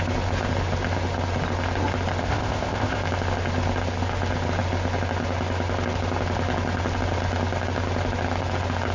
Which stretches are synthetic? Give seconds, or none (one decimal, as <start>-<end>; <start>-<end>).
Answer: 2.2-3.0